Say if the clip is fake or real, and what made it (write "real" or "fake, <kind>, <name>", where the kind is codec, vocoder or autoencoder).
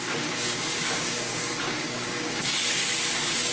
fake, codec, DAC